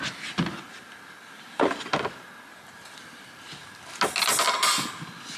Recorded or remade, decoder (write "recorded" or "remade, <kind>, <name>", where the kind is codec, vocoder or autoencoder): recorded